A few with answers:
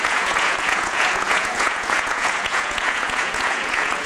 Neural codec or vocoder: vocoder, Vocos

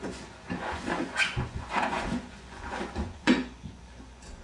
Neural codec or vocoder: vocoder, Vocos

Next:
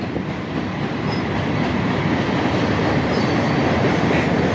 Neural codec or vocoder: none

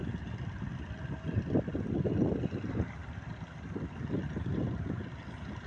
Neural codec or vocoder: none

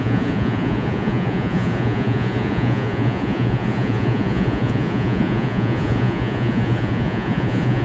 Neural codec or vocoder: vocoder, Vocos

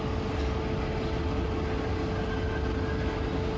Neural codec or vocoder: none